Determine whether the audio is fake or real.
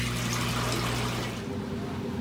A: real